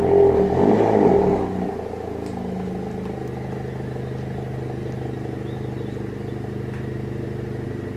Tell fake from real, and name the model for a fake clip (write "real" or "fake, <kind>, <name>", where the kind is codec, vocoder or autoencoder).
real